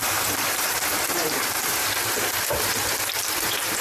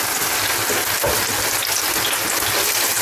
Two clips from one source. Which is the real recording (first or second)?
second